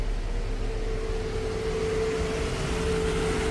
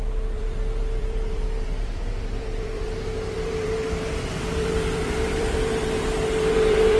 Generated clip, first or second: second